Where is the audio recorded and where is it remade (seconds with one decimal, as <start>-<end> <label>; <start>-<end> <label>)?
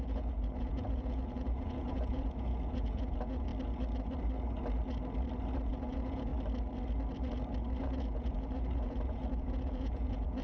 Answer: 0.0-3.5 remade; 3.5-5.7 recorded; 5.7-6.3 remade; 6.3-7.8 recorded; 7.8-10.4 remade